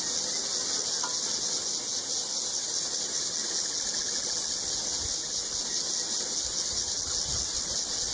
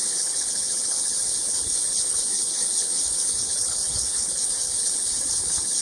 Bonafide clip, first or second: first